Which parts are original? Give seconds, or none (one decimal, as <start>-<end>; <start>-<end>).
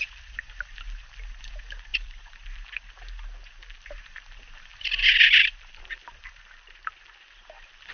0.0-1.9; 2.9-4.7; 5.8-7.9